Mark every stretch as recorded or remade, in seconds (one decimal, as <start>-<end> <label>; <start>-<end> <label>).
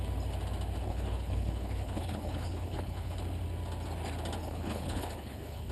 0.0-0.8 recorded; 0.8-3.2 remade; 3.2-4.4 recorded; 4.4-5.7 remade